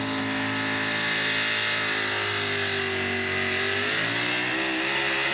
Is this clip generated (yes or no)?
no